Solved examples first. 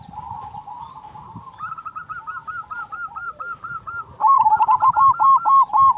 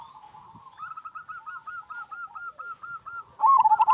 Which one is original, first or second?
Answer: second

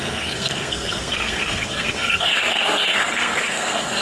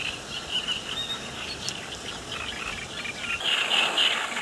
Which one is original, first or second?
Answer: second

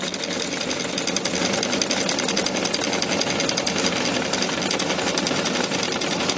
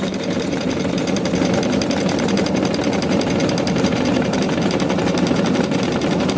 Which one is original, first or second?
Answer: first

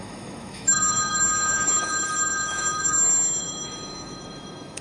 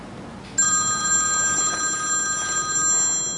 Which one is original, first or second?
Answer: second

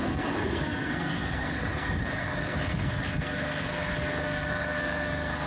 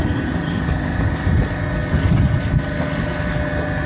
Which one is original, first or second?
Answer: second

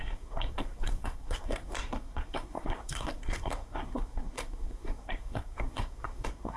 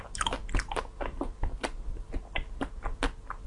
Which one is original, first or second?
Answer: second